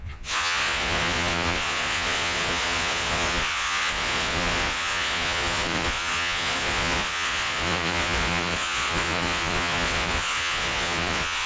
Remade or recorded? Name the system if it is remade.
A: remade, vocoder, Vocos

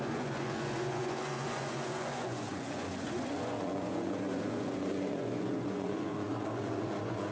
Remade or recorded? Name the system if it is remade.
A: remade, vocoder, Vocos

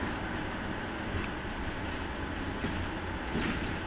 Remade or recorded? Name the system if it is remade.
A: recorded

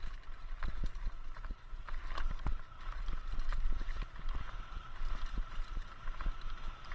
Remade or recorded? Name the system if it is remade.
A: recorded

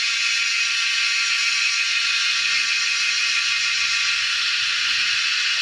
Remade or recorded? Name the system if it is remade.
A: remade, vocoder, Vocos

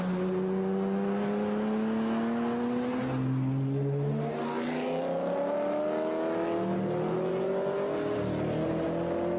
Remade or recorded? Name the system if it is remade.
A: recorded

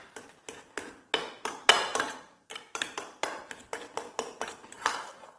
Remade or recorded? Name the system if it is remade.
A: recorded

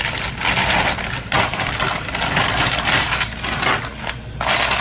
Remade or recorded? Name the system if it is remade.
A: recorded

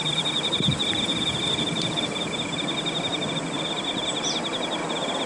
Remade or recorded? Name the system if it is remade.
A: recorded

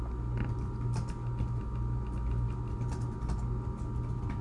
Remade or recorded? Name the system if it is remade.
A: recorded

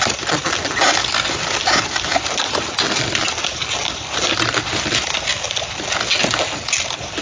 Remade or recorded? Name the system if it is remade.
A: recorded